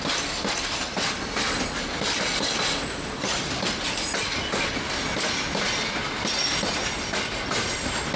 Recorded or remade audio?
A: recorded